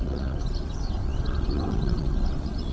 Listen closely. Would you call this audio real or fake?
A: fake